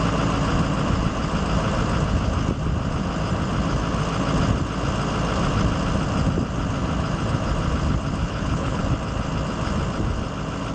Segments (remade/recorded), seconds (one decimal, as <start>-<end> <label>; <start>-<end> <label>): 0.0-8.2 recorded; 8.2-8.8 remade; 8.8-10.7 recorded